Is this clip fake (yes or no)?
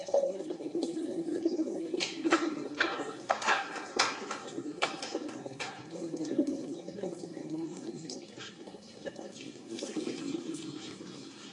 yes